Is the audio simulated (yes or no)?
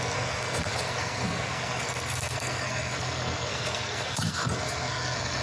yes